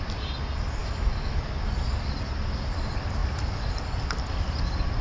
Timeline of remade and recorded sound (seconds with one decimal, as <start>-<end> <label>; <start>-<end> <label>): 0.0-0.8 recorded; 0.8-1.4 remade; 1.4-5.0 recorded